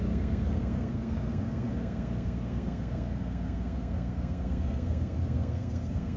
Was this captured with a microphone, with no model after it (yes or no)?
no